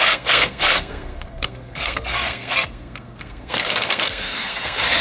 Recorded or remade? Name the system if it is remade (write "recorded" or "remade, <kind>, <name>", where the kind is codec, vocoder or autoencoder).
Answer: remade, codec, SNAC